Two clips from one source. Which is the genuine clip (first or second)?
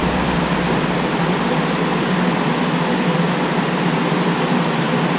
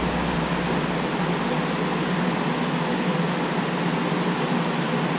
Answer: second